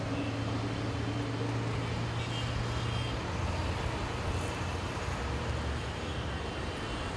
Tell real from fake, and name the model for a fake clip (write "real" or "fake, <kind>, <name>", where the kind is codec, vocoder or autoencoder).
real